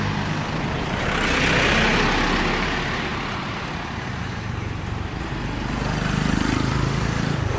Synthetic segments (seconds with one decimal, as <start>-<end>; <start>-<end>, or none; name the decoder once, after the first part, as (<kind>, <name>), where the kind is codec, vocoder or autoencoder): 3.1-7.6 (vocoder, BigVGAN v2)